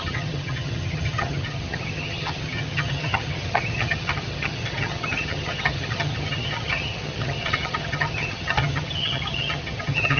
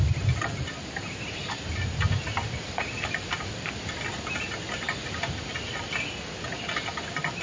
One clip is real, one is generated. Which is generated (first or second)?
first